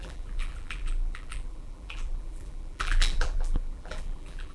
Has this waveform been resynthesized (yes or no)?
yes